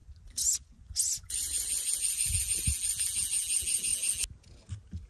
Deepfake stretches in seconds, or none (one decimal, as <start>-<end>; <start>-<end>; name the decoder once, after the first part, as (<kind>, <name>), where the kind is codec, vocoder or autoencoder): 0.0-2.3 (vocoder, Vocos)